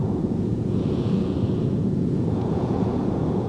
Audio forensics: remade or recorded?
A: remade